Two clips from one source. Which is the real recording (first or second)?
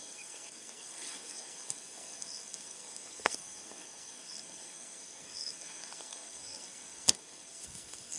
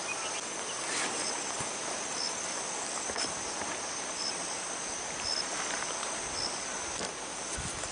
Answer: second